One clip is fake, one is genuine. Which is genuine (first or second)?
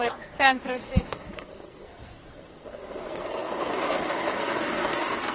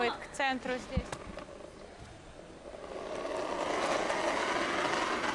second